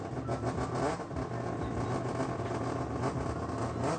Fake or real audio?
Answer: real